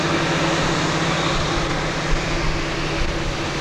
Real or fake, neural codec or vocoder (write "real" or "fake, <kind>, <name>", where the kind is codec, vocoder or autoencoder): real